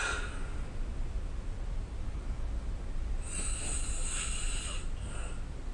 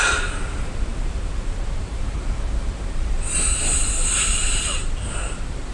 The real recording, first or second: first